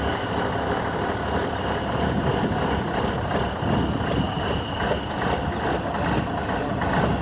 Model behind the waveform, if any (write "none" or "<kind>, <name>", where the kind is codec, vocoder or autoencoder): none